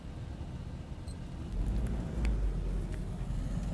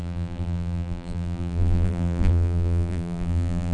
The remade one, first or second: second